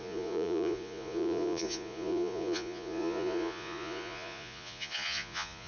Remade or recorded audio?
remade